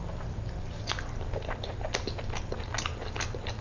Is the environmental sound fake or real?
real